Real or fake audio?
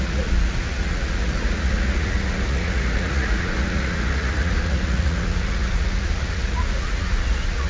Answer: fake